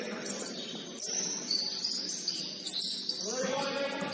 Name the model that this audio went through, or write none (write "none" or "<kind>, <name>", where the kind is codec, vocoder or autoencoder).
none